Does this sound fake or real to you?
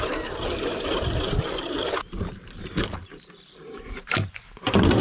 fake